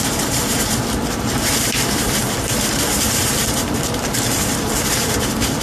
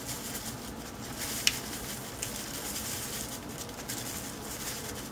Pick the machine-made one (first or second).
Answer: first